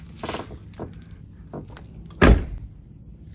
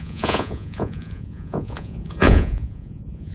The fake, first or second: second